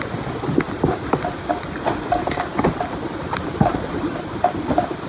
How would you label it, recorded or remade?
recorded